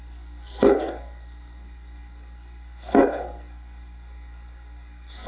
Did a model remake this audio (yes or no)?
yes